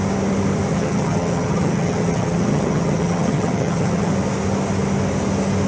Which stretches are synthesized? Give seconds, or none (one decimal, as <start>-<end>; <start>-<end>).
0.7-4.1